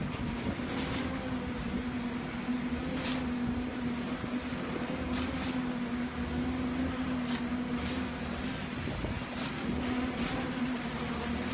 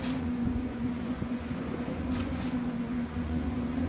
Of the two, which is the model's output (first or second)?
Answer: second